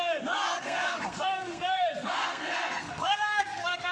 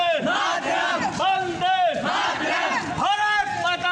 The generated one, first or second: first